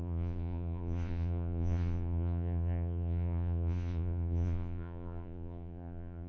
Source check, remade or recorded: remade